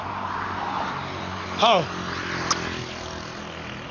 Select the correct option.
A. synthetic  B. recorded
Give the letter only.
B